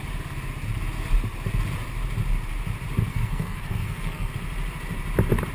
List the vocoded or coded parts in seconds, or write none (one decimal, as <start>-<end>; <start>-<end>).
3.1-4.3